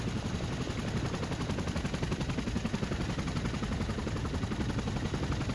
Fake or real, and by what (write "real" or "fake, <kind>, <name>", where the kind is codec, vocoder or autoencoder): real